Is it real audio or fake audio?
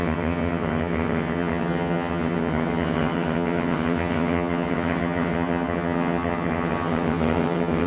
fake